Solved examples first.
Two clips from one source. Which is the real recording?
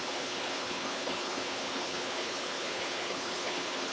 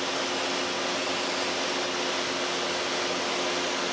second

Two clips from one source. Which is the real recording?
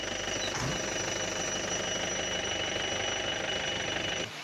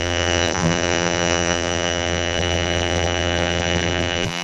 first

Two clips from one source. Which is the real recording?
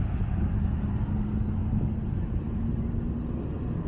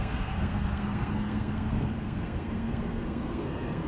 first